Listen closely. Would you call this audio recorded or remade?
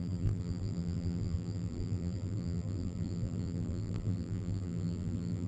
remade